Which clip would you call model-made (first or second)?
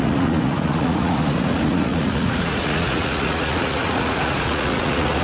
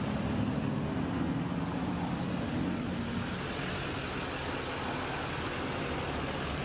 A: first